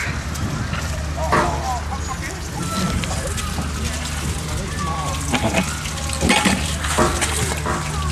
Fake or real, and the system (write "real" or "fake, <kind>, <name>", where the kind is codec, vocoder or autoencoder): real